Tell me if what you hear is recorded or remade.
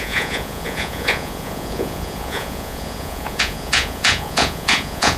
remade